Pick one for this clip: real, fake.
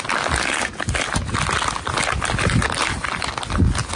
real